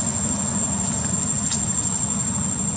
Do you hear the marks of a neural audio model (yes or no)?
no